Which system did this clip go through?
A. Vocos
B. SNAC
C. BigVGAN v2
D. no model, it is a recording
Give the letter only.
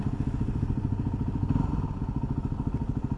D